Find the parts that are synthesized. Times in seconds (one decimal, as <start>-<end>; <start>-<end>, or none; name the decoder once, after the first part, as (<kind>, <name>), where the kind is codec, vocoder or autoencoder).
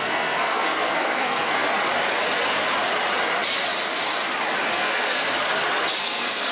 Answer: 0.0-1.7 (codec, SNAC); 4.7-5.2; 6.0-6.5